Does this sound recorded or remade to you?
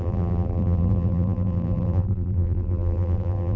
remade